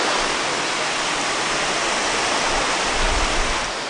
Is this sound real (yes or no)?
yes